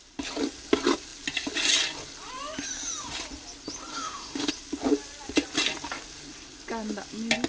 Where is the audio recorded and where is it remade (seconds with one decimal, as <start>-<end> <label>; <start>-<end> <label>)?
0.0-3.9 recorded; 3.9-4.5 remade; 4.5-7.5 recorded